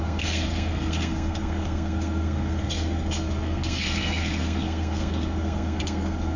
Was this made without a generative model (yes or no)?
no